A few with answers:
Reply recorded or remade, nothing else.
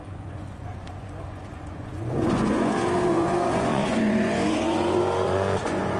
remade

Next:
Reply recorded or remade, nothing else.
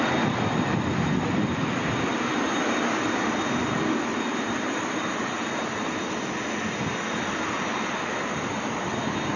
recorded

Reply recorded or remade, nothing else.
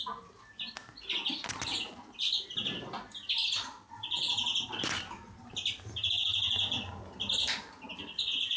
recorded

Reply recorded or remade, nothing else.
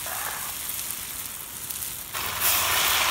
recorded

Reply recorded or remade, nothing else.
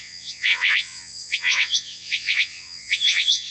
remade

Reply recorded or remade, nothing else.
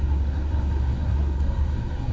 remade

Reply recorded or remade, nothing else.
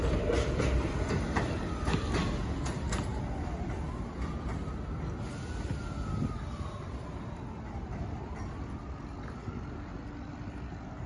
recorded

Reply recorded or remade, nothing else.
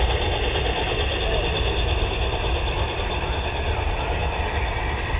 recorded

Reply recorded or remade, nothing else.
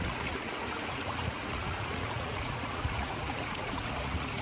remade